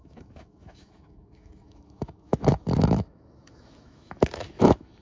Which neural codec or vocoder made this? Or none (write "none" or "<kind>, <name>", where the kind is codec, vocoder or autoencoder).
autoencoder, DAC-VAE